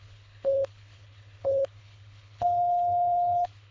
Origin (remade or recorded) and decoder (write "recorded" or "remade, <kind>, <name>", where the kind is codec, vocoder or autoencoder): remade, codec, HILCodec